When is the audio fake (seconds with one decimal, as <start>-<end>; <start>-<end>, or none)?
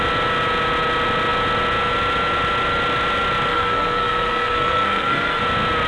3.5-5.4